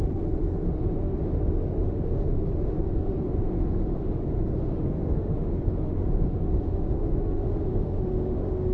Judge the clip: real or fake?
fake